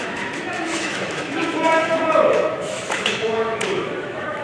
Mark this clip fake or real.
fake